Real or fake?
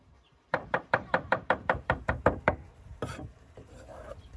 fake